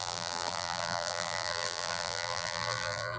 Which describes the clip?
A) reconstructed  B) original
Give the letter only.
A